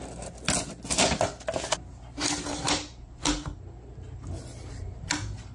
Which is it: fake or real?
real